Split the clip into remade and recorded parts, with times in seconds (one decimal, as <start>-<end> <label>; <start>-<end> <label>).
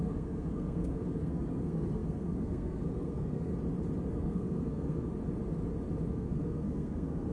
0.0-3.5 remade; 3.5-4.1 recorded; 4.1-5.1 remade; 5.1-6.1 recorded; 6.1-7.3 remade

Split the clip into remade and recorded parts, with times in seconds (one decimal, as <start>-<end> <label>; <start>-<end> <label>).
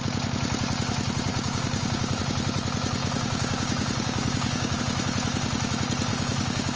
0.0-1.3 recorded; 1.3-2.2 remade; 2.2-3.0 recorded; 3.0-4.8 remade; 4.8-6.1 recorded; 6.1-6.8 remade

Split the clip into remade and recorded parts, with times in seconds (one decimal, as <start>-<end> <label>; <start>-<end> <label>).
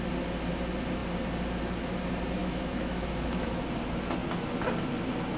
0.0-2.4 recorded; 2.4-3.6 remade; 3.6-5.4 recorded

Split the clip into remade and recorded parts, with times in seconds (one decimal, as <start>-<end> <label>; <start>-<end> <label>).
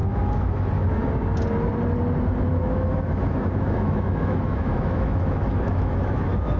0.0-0.9 remade; 0.9-2.5 recorded; 2.5-6.6 remade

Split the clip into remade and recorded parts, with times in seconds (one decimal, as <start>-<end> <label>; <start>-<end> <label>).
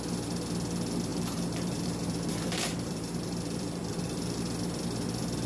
0.0-1.1 recorded; 1.1-4.4 remade; 4.4-5.5 recorded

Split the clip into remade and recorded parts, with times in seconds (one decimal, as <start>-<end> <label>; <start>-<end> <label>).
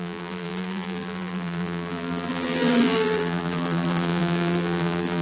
0.0-5.2 remade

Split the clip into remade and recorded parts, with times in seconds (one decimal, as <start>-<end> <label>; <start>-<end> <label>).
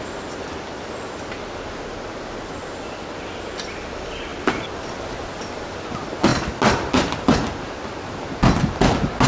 0.0-9.3 recorded